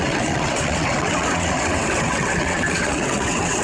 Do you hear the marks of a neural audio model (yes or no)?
yes